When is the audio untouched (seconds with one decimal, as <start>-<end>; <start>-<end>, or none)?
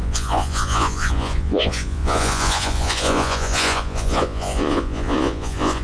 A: none